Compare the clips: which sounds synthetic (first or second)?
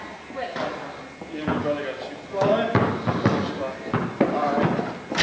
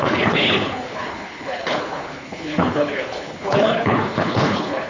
second